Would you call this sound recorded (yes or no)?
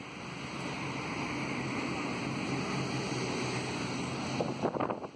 yes